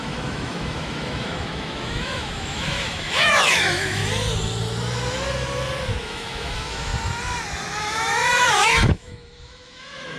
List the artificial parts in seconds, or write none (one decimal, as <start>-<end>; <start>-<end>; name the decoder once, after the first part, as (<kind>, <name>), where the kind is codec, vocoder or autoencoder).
0.0-4.0 (autoencoder, DAC-VAE); 6.0-6.9; 7.8-10.2